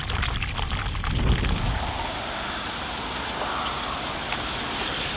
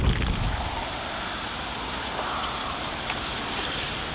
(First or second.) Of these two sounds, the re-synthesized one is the second